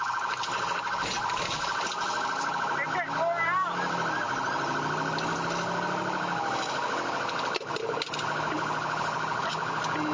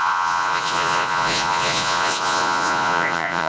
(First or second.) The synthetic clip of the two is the second